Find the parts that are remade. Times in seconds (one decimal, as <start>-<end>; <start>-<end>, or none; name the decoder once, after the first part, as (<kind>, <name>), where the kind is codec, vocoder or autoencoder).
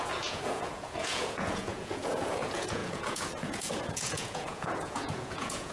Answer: 0.0-5.7 (vocoder, Vocos)